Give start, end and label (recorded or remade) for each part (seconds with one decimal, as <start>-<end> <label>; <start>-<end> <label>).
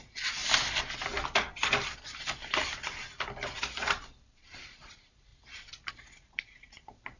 0.0-0.4 remade; 0.4-4.7 recorded; 4.7-5.3 remade; 5.3-5.9 recorded; 5.9-7.2 remade